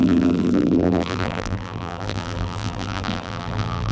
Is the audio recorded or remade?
remade